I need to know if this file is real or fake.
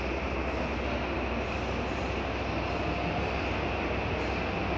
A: real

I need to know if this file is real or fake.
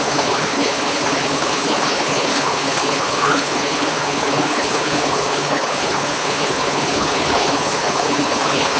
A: fake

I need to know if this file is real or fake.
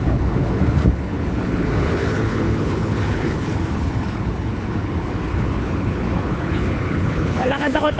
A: fake